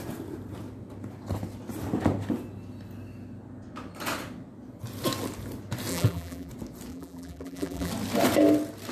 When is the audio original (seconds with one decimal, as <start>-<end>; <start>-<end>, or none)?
0.0-5.9; 6.5-6.9; 7.9-8.9